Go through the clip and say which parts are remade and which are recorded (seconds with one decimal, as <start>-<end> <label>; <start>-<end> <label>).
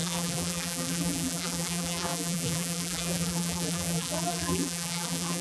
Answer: 0.0-5.4 remade